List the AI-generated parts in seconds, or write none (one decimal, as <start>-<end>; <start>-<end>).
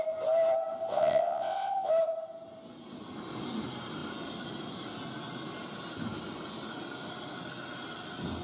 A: 0.9-1.9